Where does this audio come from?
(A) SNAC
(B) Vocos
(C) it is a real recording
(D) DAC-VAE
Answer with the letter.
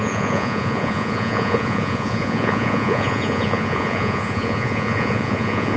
B